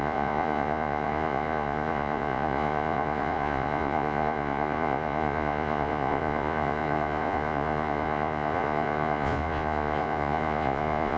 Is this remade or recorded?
remade